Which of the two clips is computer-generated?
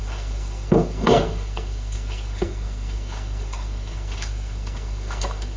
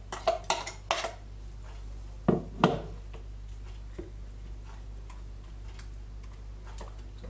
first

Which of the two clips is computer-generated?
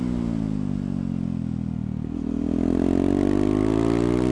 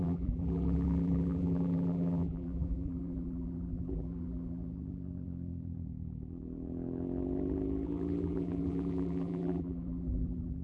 second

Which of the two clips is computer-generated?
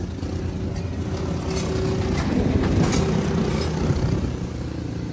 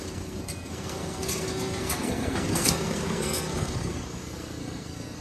second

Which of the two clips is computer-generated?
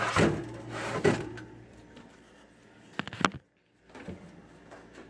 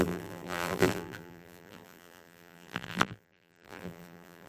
second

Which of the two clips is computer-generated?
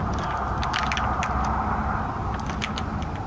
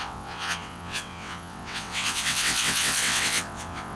second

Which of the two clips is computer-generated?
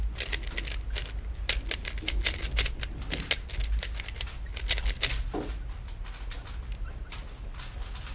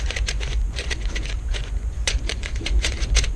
second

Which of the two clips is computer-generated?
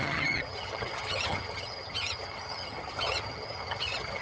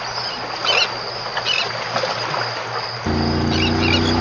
first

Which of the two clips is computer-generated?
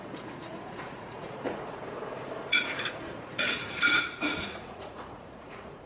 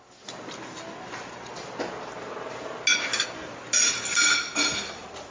first